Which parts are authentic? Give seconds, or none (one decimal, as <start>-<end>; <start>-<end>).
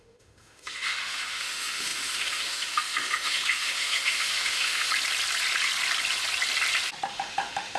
4.9-7.1